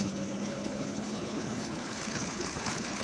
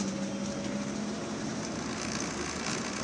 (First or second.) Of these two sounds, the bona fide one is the second